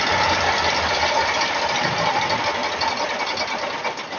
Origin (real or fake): real